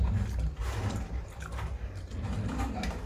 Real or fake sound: real